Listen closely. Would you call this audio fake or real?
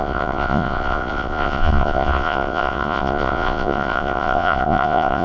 fake